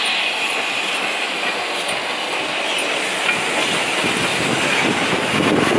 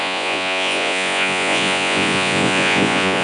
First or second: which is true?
first